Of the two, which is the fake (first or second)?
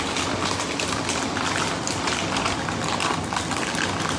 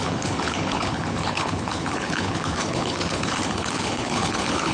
second